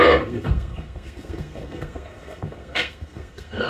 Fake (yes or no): yes